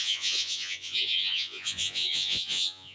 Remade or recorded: remade